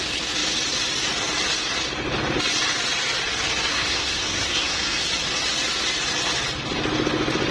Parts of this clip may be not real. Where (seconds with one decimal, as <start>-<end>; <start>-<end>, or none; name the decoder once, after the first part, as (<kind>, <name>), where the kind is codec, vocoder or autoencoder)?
3.7-5.1 (codec, SNAC)